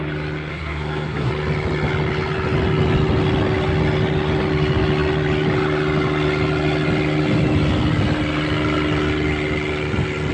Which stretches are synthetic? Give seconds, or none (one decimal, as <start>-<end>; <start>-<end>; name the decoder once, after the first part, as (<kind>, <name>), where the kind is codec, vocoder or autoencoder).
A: 0.5-1.3 (codec, SNAC)